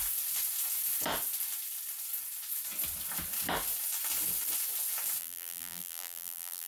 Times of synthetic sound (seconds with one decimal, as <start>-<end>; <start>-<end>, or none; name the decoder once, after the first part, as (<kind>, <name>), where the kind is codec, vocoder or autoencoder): 5.2-6.7 (vocoder, BigVGAN v2)